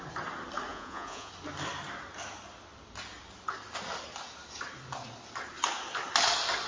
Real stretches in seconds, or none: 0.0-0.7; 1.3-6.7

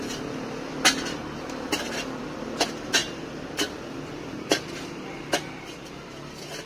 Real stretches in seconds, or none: 0.0-6.7

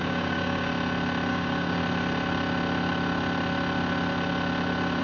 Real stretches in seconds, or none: 0.7-1.3; 1.8-5.0

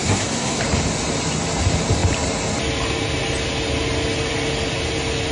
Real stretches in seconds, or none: 0.6-5.3